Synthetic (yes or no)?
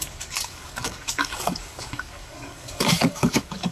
yes